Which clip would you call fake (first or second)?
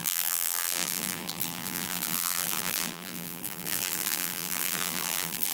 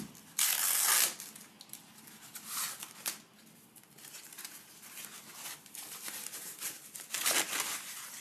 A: first